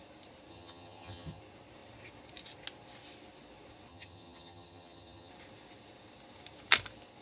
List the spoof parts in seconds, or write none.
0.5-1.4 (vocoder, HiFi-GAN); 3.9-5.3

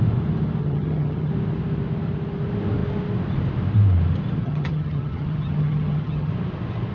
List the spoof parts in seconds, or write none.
0.6-1.3 (vocoder, HiFi-GAN); 4.4-6.3

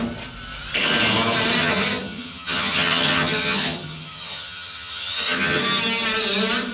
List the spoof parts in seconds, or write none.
1.6-5.6 (vocoder, HiFi-GAN)

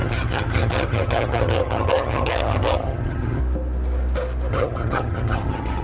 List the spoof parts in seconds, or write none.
0.0-3.4 (vocoder, HiFi-GAN); 4.5-5.8

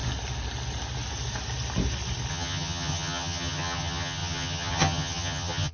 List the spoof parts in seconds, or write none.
2.3-5.7 (vocoder, HiFi-GAN)

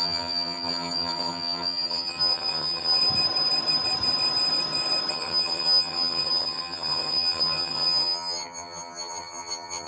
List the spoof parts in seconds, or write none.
0.0-3.0 (vocoder, HiFi-GAN); 5.1-9.9

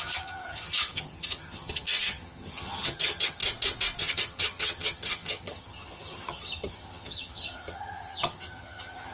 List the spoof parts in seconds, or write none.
0.0-3.4 (vocoder, HiFi-GAN); 4.0-9.1